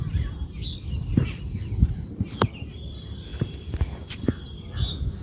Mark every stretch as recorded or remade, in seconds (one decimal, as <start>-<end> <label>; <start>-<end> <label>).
0.0-2.0 remade; 2.0-2.7 recorded; 2.7-5.2 remade